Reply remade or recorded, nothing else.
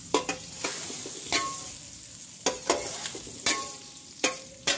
recorded